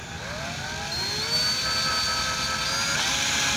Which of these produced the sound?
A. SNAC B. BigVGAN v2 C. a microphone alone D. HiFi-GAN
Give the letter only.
C